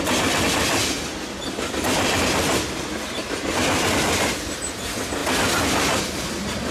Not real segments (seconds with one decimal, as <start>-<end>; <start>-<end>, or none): none